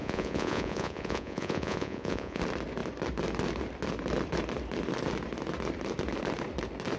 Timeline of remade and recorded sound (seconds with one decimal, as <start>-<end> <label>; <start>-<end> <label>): 0.0-2.4 remade; 2.4-7.0 recorded